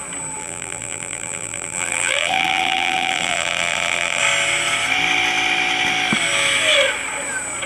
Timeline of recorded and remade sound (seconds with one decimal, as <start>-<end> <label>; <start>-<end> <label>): 0.0-0.4 recorded; 0.4-4.2 remade; 4.2-7.7 recorded